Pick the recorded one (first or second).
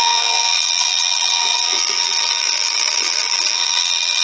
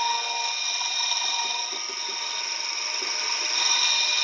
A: second